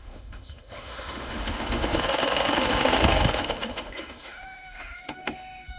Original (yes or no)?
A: no